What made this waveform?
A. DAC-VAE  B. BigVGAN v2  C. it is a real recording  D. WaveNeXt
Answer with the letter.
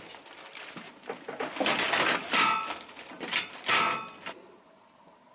C